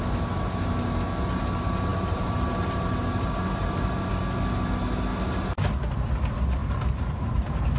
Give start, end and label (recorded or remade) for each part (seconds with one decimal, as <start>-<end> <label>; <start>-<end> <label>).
0.0-1.9 recorded; 1.9-4.1 remade; 4.1-5.1 recorded; 5.1-5.7 remade; 5.7-6.6 recorded; 6.6-7.8 remade